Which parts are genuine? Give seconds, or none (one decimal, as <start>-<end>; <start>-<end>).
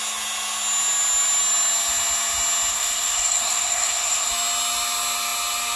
0.0-2.7; 4.3-5.8